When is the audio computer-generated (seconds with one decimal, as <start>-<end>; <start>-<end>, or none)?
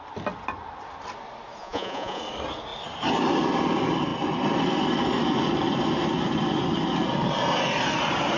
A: 1.6-2.2